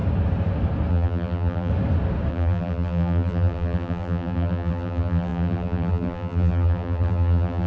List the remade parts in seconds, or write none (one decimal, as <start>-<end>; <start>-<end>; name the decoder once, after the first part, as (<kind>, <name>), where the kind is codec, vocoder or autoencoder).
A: 0.9-1.7 (vocoder, BigVGAN v2); 2.3-7.7